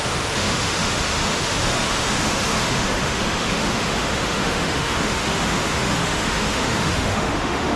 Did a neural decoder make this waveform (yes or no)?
yes